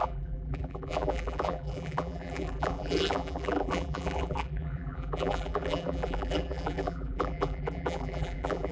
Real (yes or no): no